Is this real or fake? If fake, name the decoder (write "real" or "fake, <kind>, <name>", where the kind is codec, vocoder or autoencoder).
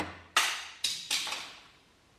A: real